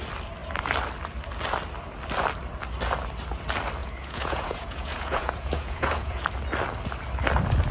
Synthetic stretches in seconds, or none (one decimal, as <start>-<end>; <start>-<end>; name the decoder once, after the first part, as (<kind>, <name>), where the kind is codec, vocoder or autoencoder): 3.8-6.2 (vocoder, Vocos)